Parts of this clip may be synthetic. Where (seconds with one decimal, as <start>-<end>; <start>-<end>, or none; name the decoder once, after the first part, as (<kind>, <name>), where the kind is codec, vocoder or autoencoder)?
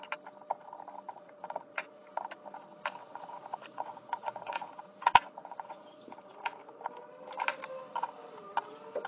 1.1-2.0 (vocoder, Vocos); 3.0-6.8